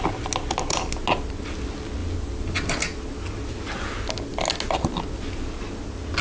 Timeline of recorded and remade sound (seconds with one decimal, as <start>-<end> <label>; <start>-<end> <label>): 0.0-6.2 recorded